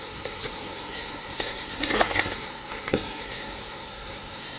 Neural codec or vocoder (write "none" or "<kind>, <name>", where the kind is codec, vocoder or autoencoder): codec, SNAC